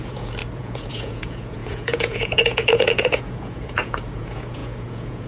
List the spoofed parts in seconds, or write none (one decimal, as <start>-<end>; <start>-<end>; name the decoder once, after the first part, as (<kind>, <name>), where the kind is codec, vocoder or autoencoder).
0.0-5.3 (vocoder, Vocos)